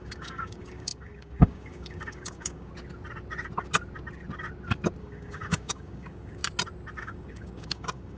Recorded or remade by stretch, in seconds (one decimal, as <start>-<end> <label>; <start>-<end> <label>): 0.0-2.7 remade; 2.7-5.0 recorded; 5.0-6.4 remade; 6.4-7.0 recorded; 7.0-8.2 remade